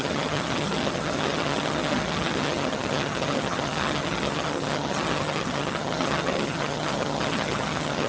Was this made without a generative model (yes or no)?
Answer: no